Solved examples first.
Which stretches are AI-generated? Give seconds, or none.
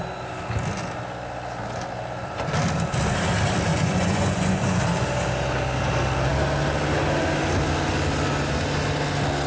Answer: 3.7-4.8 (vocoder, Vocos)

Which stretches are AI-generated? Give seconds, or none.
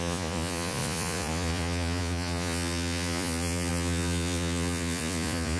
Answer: 0.0-5.6 (vocoder, Vocos)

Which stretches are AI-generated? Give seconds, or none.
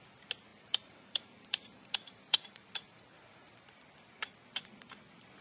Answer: 0.5-3.7 (vocoder, BigVGAN v2)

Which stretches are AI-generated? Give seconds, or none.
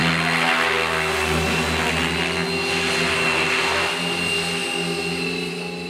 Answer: none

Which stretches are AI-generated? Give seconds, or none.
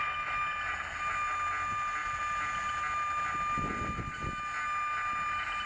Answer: none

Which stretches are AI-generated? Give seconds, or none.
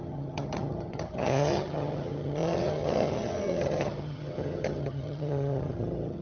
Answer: 0.0-6.2 (vocoder, HiFi-GAN)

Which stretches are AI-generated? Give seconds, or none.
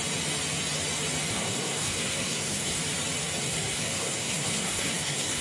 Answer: 1.3-2.8 (codec, SNAC); 3.4-5.4